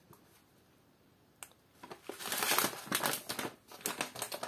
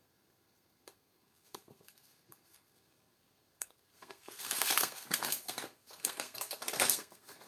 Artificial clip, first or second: second